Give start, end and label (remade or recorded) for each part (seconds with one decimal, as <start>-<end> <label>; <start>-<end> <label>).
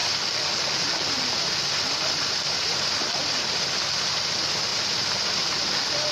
0.0-6.1 recorded